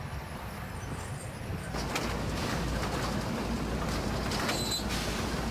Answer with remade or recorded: recorded